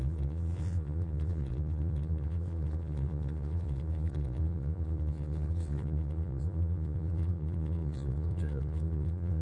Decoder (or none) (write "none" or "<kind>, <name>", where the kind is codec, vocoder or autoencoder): vocoder, Vocos